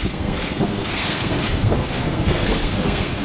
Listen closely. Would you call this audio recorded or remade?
remade